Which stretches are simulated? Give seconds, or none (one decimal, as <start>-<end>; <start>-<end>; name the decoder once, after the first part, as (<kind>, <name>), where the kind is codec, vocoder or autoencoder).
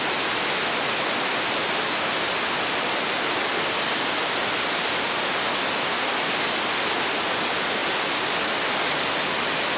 none